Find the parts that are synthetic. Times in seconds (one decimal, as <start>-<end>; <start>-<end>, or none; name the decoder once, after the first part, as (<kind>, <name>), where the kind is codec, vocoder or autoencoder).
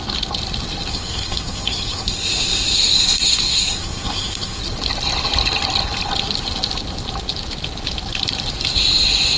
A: 0.9-4.6 (codec, SNAC)